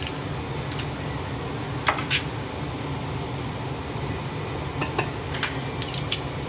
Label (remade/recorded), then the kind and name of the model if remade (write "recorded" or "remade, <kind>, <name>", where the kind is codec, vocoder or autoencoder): recorded